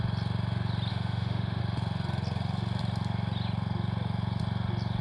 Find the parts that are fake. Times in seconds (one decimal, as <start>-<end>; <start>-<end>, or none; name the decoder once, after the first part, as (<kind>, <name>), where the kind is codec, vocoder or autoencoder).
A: 0.9-1.6 (autoencoder, DAC-VAE)